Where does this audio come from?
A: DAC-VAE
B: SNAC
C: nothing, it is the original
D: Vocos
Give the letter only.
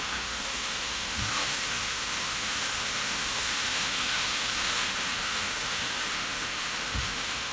A